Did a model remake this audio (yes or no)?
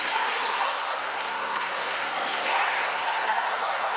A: yes